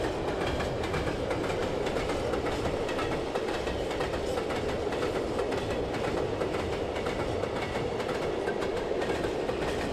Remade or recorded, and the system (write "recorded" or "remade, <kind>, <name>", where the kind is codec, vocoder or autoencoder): recorded